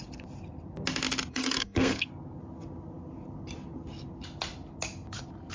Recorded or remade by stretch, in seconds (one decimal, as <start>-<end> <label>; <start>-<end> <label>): 0.0-1.3 recorded; 1.3-2.1 remade; 2.1-5.5 recorded